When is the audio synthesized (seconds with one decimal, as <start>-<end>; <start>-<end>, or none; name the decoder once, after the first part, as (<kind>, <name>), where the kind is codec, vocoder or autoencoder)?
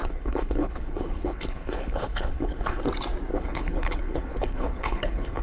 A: 0.0-2.8 (codec, HILCodec); 3.3-5.4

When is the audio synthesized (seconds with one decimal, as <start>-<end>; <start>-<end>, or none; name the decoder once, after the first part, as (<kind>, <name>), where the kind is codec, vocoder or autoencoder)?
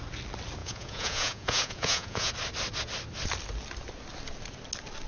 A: 0.6-2.3 (vocoder, Vocos)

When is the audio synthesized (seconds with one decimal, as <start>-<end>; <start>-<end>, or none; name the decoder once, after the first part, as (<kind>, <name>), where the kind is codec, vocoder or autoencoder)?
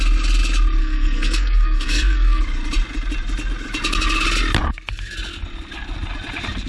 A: 0.8-2.4 (codec, SNAC)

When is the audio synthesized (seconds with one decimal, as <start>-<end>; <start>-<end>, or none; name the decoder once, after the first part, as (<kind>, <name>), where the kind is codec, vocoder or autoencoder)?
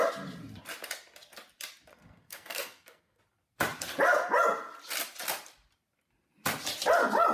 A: 1.9-3.2 (codec, SNAC)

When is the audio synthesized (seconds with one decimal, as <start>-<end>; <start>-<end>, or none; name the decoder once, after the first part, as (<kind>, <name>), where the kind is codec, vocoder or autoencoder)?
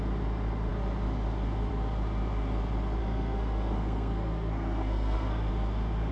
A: 3.0-5.5 (codec, SNAC)